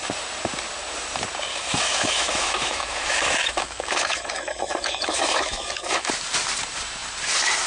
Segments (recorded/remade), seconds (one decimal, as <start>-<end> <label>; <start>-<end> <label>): 0.0-1.5 recorded; 1.5-6.1 remade; 6.1-7.7 recorded